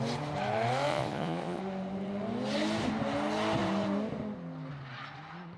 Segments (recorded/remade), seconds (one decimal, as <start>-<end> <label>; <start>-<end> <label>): 0.0-0.9 recorded; 0.9-1.6 remade; 1.6-5.6 recorded